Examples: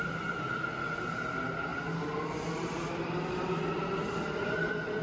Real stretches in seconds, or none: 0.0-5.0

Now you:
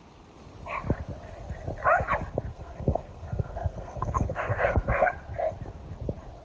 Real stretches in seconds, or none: 0.0-2.5; 5.1-6.4